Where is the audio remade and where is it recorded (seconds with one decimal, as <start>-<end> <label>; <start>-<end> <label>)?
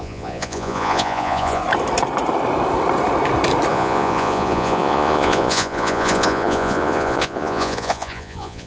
0.0-1.6 remade; 1.6-3.7 recorded; 3.7-8.7 remade